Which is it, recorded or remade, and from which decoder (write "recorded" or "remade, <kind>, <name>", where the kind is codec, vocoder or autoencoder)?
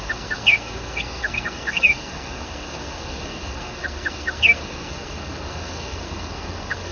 remade, codec, SNAC